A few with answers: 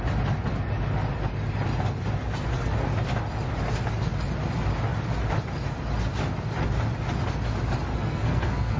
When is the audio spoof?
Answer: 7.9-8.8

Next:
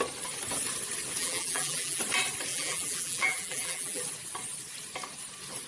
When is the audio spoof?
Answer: 1.2-2.0; 2.5-4.0

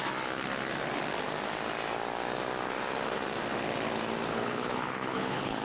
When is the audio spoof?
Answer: 4.3-5.6

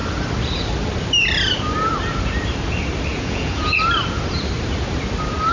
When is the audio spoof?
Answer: 3.1-3.8

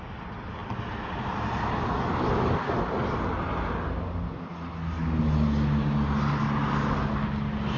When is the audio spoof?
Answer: none

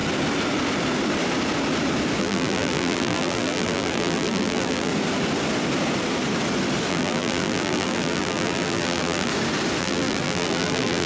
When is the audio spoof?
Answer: 2.2-4.9; 6.9-9.3; 9.8-11.1